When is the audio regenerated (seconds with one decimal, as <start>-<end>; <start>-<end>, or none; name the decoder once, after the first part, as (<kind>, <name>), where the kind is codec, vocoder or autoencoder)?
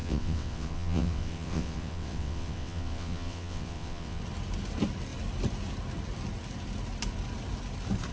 0.0-4.2 (vocoder, WaveNeXt)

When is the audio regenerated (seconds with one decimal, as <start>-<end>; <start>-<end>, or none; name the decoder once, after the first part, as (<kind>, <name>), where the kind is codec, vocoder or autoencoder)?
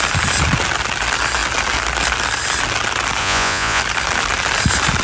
3.2-3.8 (vocoder, Vocos)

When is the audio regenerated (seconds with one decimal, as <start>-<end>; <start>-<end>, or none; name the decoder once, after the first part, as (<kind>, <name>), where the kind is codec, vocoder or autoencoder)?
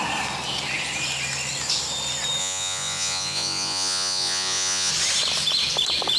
2.4-4.9 (vocoder, Vocos)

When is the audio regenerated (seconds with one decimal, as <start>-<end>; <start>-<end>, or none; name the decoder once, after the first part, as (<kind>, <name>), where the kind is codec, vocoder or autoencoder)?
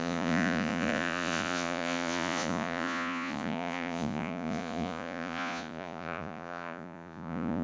0.0-7.6 (vocoder, Vocos)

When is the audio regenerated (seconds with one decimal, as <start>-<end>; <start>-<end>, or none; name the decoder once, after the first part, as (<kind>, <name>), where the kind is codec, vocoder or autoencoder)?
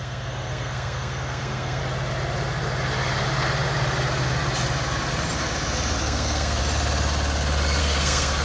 0.0-1.8 (codec, SNAC); 6.0-6.6; 7.8-8.4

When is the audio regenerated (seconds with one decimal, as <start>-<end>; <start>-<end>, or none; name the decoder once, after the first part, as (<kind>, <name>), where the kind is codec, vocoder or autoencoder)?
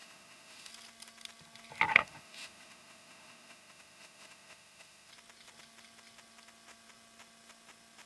0.0-0.7 (autoencoder, DAC-VAE); 1.9-5.1